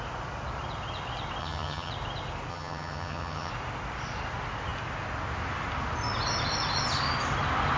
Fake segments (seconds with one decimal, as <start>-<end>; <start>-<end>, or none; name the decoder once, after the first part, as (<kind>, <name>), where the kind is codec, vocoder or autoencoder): 1.4-1.9 (vocoder, HiFi-GAN); 2.5-3.5